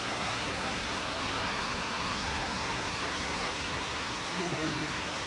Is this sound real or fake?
fake